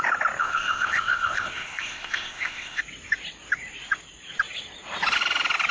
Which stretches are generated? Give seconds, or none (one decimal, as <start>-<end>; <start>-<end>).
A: 0.4-2.8